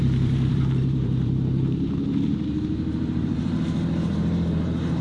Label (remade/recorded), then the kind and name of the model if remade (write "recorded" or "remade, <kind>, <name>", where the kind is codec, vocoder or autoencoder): remade, vocoder, BigVGAN v2